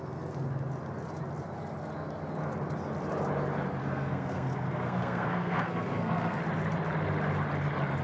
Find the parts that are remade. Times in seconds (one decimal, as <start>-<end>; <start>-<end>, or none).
3.8-6.4